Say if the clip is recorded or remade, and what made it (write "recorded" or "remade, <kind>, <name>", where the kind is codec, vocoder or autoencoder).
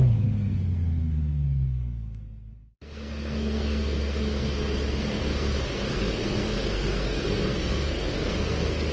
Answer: remade, codec, SNAC